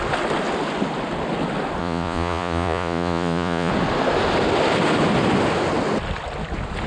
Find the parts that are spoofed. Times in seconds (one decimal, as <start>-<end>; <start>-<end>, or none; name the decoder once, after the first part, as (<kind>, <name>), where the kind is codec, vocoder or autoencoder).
1.8-3.7 (vocoder, Vocos)